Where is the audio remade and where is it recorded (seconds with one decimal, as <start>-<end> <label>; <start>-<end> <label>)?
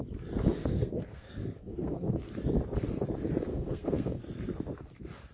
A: 0.0-0.6 recorded; 0.6-2.3 remade; 2.3-3.5 recorded; 3.5-4.2 remade; 4.2-5.3 recorded